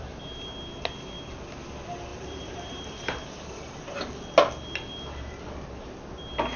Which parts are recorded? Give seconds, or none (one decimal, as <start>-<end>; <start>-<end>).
0.0-2.1; 3.8-6.6

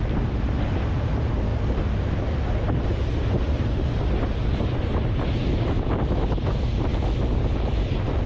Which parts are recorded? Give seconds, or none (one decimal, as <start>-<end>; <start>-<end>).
0.0-6.9

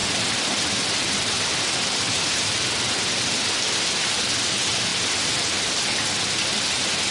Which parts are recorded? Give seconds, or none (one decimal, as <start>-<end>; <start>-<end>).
4.2-4.9; 5.7-7.1

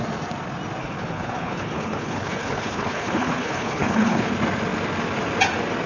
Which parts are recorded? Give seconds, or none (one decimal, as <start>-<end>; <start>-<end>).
0.0-0.8; 4.3-5.9

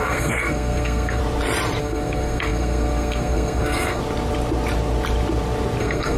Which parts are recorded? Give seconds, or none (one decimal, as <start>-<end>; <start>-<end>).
1.2-1.8; 4.0-5.8

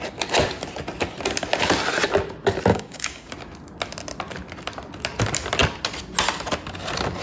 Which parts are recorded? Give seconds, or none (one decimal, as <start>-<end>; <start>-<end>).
0.0-2.7; 3.3-7.2

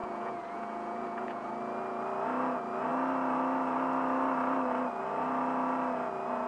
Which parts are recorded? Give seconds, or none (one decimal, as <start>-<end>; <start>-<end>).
1.5-6.5

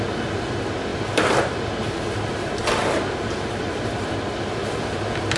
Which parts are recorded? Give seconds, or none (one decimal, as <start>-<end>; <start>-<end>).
0.0-0.9; 4.1-5.4